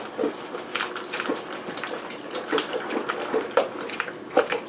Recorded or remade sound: recorded